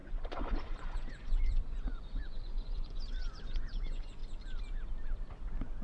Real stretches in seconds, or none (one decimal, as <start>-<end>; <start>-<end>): 4.2-5.8